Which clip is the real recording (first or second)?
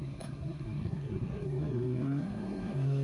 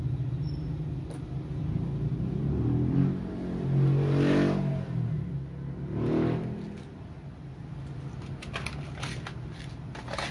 second